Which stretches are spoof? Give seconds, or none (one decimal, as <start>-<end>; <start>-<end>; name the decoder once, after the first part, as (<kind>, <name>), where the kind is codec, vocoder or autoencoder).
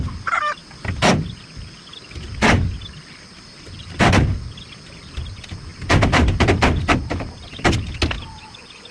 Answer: none